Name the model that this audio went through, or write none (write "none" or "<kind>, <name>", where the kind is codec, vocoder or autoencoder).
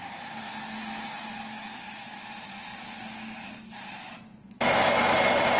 none